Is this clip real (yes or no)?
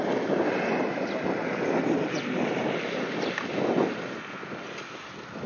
yes